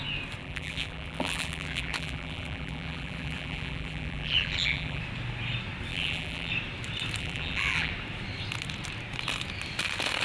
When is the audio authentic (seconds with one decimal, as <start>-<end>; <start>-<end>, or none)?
0.0-0.4; 5.0-5.9; 6.5-7.2; 7.9-10.2